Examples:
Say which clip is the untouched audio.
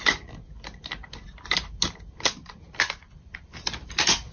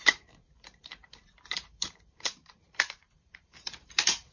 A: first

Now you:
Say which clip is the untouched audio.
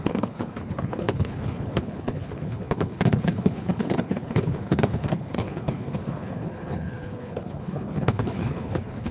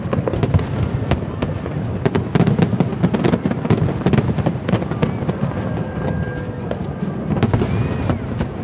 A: second